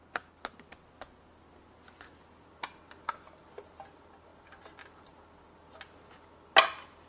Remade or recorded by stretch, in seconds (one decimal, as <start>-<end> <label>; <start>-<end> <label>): 0.0-7.1 recorded